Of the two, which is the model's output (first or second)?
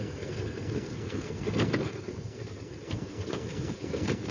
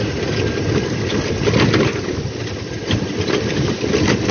first